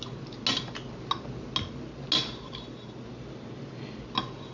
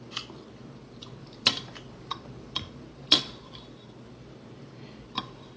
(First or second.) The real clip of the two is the first